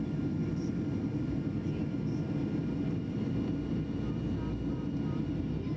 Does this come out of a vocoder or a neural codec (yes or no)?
no